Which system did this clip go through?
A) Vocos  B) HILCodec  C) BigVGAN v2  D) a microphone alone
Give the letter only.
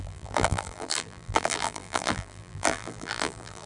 C